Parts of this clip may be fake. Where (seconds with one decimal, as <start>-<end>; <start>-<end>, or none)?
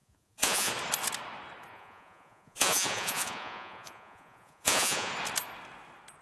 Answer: 0.0-0.7; 1.7-5.1